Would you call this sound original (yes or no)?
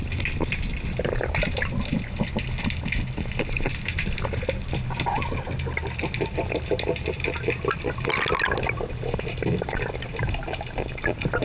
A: yes